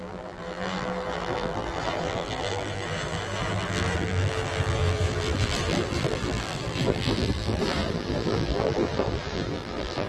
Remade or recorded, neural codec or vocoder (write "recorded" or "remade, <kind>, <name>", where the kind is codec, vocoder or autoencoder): remade, vocoder, BigVGAN v2